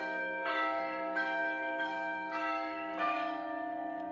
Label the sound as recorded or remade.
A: remade